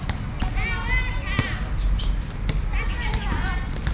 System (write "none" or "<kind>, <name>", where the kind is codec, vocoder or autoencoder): none